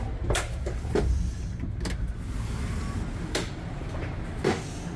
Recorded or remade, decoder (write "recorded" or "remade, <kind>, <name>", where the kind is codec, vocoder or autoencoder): recorded